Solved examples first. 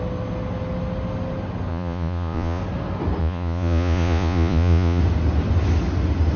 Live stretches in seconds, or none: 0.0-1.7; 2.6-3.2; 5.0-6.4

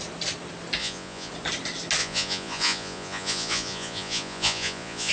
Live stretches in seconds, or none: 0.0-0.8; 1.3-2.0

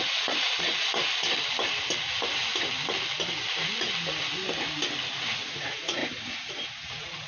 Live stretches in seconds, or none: 0.9-5.3; 6.0-6.5

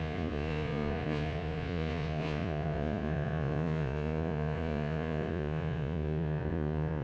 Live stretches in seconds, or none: none

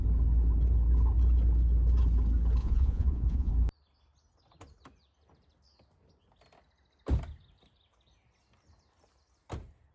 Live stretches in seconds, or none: 0.0-2.6; 3.5-9.9

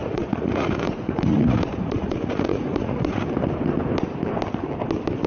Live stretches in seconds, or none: 3.2-5.3

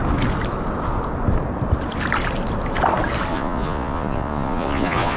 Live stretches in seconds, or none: 0.0-3.3